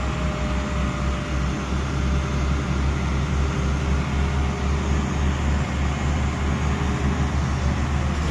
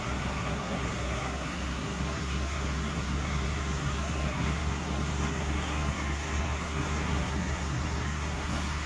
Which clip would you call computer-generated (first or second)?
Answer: second